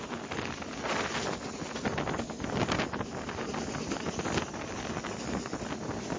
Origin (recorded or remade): recorded